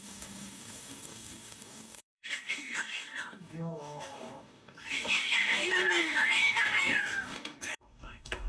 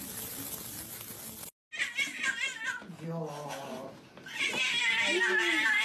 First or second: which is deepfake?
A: first